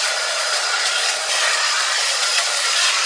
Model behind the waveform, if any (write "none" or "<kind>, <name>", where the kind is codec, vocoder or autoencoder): vocoder, Vocos